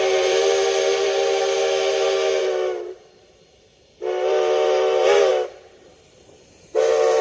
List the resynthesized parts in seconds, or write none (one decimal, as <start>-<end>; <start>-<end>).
0.0-7.2